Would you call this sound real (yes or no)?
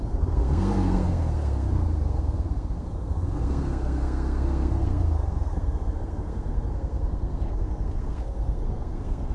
no